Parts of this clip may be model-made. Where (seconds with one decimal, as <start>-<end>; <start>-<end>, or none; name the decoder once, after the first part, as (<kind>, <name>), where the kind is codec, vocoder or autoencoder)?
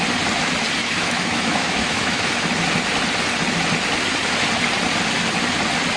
0.8-2.3 (autoencoder, DAC-VAE)